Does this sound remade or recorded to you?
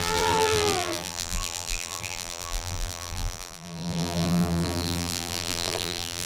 remade